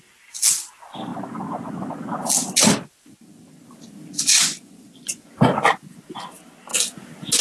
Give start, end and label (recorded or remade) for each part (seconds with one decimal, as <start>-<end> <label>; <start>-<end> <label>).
0.0-4.3 recorded; 4.3-5.3 remade; 5.3-7.4 recorded

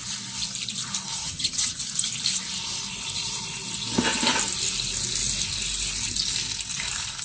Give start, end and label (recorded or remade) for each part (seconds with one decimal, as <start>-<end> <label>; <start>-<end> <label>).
0.0-1.2 recorded; 1.2-1.8 remade; 1.8-7.2 recorded

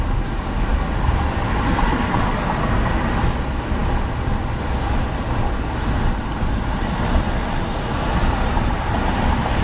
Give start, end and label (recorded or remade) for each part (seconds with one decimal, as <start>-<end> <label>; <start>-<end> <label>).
0.0-9.6 recorded

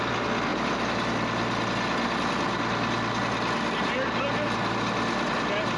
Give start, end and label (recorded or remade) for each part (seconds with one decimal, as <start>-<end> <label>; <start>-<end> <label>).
0.0-5.8 recorded